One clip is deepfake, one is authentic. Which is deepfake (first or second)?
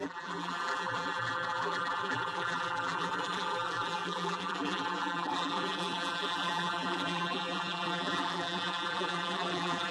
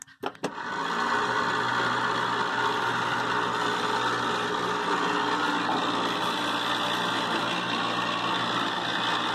first